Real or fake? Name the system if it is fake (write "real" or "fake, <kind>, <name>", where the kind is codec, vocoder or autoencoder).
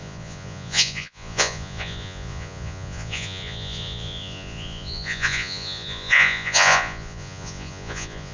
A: fake, vocoder, Vocos